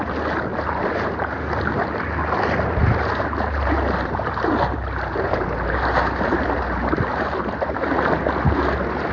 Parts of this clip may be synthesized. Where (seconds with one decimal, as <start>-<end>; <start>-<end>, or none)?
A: 0.5-1.4; 2.8-7.9